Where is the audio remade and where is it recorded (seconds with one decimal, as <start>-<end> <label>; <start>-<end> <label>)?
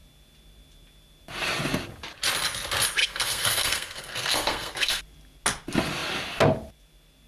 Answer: 0.0-3.0 recorded; 3.0-5.0 remade; 5.0-7.3 recorded